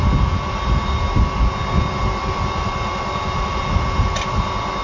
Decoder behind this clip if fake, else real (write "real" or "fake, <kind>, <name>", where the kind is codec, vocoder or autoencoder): real